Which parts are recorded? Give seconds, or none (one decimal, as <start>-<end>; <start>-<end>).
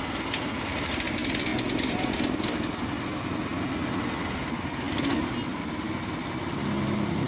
0.0-7.3